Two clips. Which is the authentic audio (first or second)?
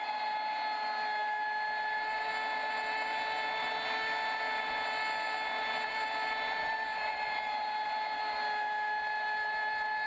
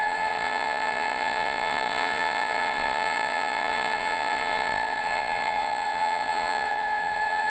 first